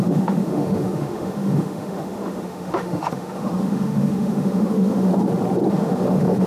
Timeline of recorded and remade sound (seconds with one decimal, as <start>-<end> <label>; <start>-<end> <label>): 0.0-5.1 remade; 5.1-5.7 recorded; 5.7-6.5 remade